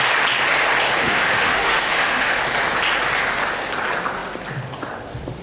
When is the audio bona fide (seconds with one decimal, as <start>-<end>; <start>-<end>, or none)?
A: 0.0-1.0; 2.4-5.4